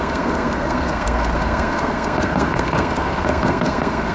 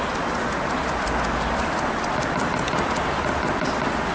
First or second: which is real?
second